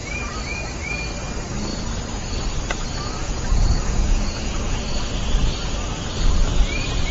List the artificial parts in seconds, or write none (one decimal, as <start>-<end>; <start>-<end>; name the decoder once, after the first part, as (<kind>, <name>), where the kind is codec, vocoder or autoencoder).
3.2-4.8 (vocoder, Vocos)